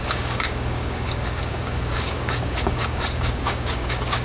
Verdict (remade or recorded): remade